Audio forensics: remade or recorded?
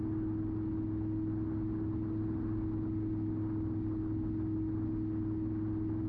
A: recorded